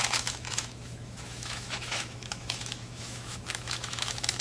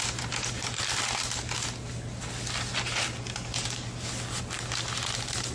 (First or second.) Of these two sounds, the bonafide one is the second